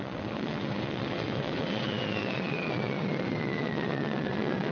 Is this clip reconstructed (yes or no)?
yes